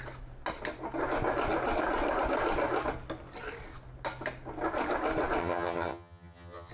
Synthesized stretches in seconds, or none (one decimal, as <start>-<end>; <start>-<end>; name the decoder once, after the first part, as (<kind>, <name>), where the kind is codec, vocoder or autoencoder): 5.4-6.7 (vocoder, HiFi-GAN)